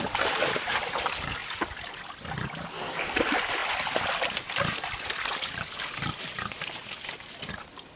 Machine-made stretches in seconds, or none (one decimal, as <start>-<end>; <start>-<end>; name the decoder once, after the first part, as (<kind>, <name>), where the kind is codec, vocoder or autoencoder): none